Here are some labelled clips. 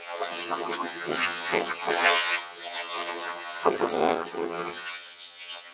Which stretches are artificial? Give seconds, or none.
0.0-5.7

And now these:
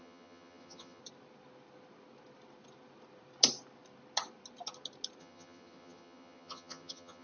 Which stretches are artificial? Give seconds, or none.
0.0-1.0; 5.2-7.2

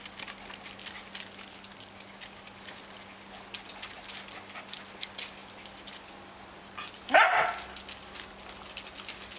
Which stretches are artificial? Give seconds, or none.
none

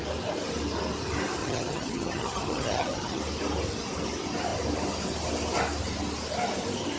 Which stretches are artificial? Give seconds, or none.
1.4-3.2